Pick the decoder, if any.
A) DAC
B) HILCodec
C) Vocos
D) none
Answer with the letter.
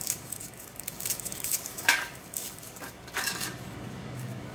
A